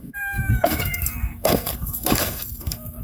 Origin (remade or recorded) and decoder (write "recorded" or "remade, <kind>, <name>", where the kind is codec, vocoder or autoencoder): remade, codec, SNAC